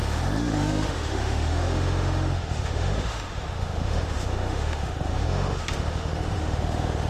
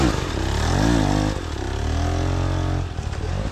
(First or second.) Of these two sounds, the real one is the second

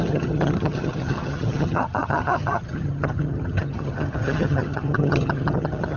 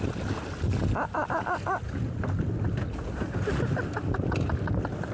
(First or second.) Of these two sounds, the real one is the second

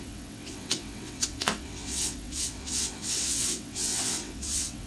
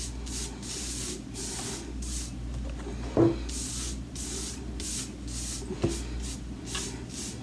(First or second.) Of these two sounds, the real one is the second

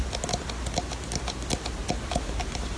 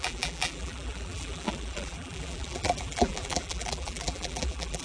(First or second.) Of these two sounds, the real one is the first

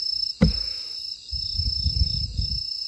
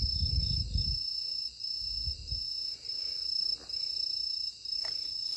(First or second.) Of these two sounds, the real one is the second